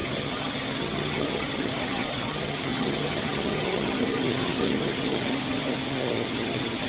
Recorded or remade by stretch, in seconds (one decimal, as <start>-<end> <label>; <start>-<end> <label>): 0.0-6.9 remade

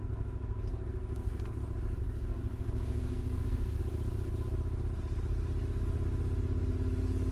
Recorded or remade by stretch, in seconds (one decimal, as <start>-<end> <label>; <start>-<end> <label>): 0.0-1.6 remade; 1.6-2.0 recorded; 2.0-3.8 remade; 3.8-7.3 recorded